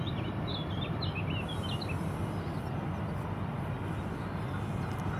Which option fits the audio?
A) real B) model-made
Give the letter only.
A